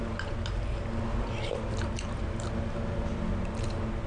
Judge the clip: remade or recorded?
recorded